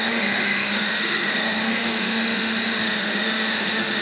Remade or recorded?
remade